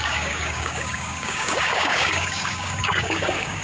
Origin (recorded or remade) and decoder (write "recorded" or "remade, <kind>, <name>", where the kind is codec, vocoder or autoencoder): remade, codec, DAC